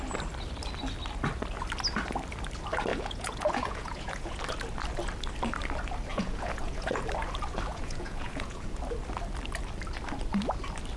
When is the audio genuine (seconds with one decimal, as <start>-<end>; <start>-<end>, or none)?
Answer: 0.0-2.9; 4.4-6.1; 7.0-7.7; 8.8-11.0